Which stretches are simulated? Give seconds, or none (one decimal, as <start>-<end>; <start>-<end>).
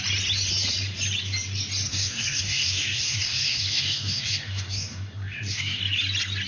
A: 1.9-5.8